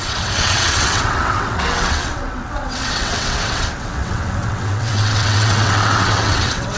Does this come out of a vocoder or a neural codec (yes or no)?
yes